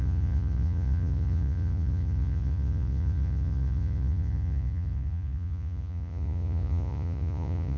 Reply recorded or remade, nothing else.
remade